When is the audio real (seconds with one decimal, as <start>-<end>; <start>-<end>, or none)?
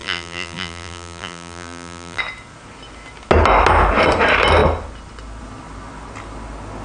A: 2.2-6.8